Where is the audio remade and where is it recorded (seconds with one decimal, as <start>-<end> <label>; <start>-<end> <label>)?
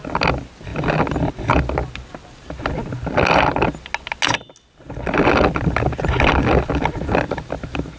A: 0.0-8.0 recorded